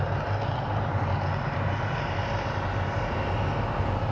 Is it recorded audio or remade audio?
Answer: recorded